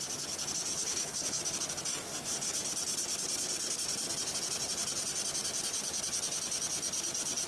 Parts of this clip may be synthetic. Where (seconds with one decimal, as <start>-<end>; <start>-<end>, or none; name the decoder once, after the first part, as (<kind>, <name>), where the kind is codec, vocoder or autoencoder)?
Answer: 0.7-1.4 (codec, HILCodec)